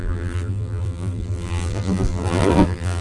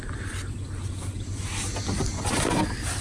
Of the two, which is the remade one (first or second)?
first